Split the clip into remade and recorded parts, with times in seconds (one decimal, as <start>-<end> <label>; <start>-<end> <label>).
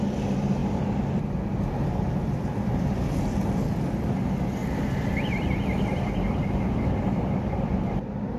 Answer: 0.0-8.4 recorded